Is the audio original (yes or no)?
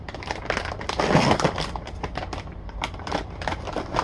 no